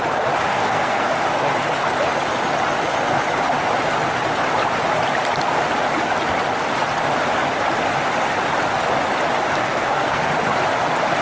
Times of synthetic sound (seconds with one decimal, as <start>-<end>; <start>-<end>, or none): 0.5-1.1; 9.6-10.3